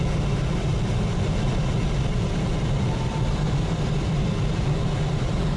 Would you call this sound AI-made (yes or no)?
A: yes